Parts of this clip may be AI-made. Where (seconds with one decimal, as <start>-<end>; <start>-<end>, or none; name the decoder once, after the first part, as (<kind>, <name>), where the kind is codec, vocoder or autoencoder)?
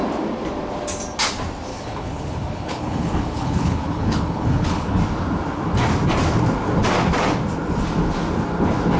1.7-5.0 (codec, HILCodec)